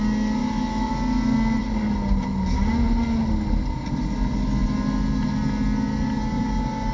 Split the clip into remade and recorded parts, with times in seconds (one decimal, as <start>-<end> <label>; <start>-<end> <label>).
0.0-0.4 recorded; 0.4-0.9 remade; 0.9-6.9 recorded

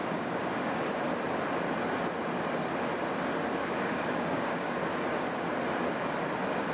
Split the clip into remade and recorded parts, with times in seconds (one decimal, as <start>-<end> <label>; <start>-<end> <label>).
0.0-0.9 remade; 0.9-3.6 recorded; 3.6-4.7 remade; 4.7-6.7 recorded